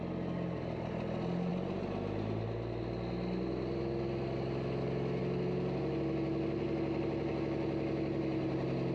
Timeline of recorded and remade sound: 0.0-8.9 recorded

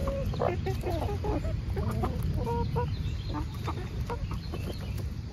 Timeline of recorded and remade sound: 0.0-5.3 recorded

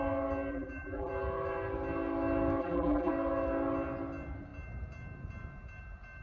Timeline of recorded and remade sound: 0.0-0.5 recorded; 0.5-1.1 remade; 1.1-2.6 recorded; 2.6-3.1 remade; 3.1-6.2 recorded

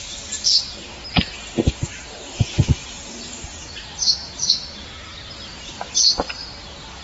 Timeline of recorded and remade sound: 0.0-4.2 recorded; 4.2-4.9 remade; 4.9-7.0 recorded

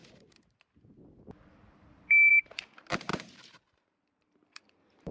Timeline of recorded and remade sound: 0.0-2.3 recorded; 2.3-5.1 remade

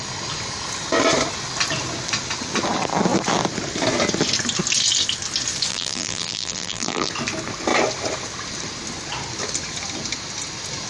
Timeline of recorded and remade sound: 0.0-5.7 recorded; 5.7-7.1 remade; 7.1-10.9 recorded